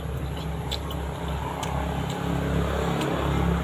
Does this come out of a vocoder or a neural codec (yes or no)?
no